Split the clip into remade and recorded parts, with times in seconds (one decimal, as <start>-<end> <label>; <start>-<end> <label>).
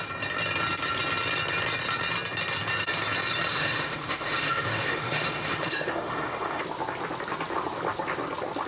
0.0-3.5 recorded; 3.5-6.6 remade; 6.6-8.7 recorded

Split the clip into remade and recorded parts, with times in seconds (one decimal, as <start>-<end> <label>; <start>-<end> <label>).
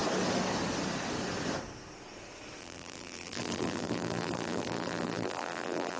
0.0-2.6 recorded; 2.6-6.0 remade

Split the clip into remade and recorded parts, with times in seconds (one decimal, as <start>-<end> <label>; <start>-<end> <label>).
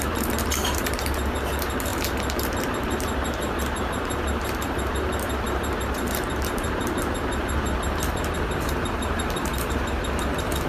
0.0-10.7 remade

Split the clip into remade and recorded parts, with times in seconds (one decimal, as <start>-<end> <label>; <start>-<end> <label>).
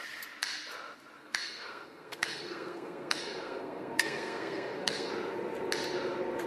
0.0-1.2 recorded; 1.2-5.1 remade; 5.1-6.5 recorded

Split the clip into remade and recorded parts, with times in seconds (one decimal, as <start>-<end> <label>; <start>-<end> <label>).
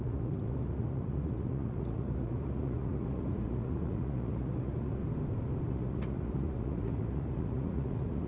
0.0-5.0 remade; 5.0-5.7 recorded; 5.7-8.3 remade